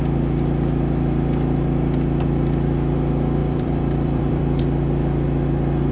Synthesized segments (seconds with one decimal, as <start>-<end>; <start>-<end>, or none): 3.4-4.6